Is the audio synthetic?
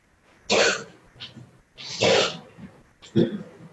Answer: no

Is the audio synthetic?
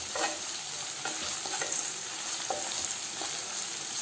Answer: no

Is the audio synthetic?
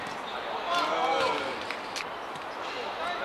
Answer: no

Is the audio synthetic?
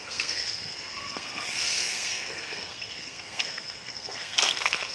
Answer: yes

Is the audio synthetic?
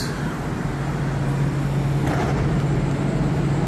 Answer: no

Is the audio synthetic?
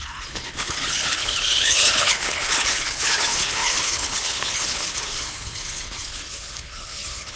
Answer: yes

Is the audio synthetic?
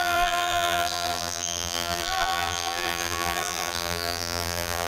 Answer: yes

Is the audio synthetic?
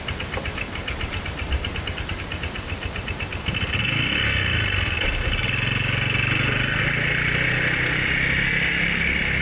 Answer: no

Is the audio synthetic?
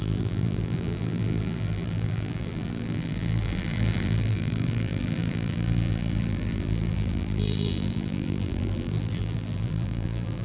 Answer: yes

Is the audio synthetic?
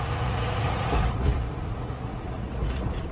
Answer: yes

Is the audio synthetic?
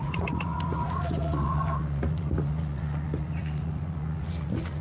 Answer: yes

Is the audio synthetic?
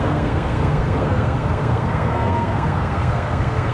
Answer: yes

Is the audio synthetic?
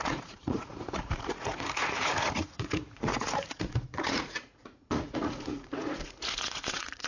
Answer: yes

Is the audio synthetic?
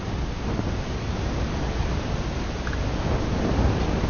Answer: no